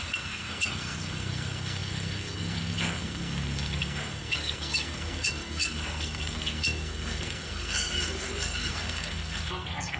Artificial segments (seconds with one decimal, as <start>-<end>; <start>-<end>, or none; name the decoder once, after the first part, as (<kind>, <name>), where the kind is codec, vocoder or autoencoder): 0.0-10.0 (codec, SNAC)

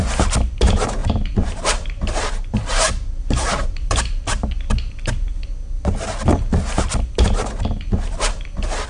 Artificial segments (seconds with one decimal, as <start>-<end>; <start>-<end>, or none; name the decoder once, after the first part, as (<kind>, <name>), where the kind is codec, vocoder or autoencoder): 1.0-4.0 (vocoder, BigVGAN v2)

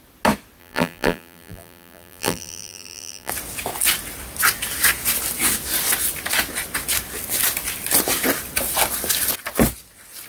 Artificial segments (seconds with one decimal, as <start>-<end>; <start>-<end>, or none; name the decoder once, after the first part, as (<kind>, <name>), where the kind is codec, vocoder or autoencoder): 0.6-3.3 (vocoder, BigVGAN v2)

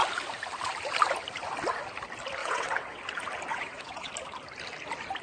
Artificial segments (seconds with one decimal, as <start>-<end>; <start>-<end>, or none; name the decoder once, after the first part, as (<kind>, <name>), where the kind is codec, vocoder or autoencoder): 2.4-3.0 (vocoder, WaveNeXt); 3.5-4.1

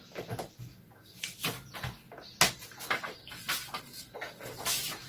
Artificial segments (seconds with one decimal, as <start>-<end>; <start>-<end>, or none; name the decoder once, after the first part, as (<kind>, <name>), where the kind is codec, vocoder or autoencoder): none

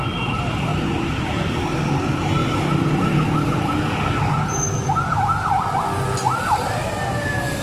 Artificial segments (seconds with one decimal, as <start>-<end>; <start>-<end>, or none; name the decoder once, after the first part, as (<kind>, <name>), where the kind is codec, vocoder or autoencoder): none